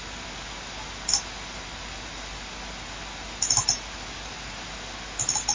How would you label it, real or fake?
real